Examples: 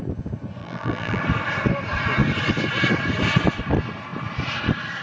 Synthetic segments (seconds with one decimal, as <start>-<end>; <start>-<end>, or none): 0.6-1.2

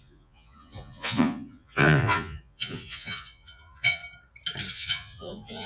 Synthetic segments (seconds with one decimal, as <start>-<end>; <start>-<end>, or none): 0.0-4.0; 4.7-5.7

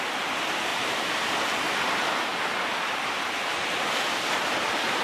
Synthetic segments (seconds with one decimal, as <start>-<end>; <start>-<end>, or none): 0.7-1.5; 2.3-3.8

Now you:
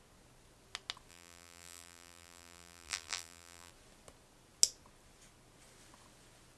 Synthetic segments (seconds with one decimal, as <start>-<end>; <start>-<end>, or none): 1.1-3.7

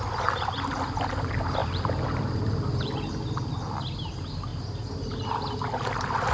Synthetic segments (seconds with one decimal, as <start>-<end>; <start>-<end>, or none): 1.6-3.1